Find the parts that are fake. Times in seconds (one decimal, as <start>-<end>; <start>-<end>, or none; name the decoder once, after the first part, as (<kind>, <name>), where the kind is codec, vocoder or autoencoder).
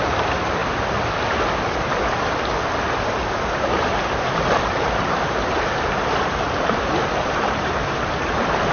0.0-0.6 (vocoder, BigVGAN v2); 3.9-8.7